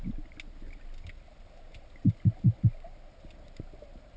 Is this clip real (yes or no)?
yes